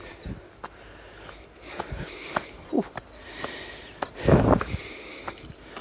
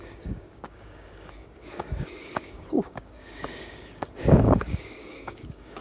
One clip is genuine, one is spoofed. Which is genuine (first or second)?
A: first